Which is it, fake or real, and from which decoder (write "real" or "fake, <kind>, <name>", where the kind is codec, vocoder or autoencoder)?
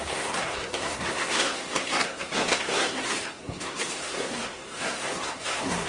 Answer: fake, codec, SNAC